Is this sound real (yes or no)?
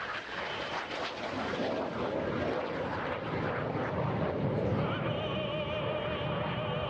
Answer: yes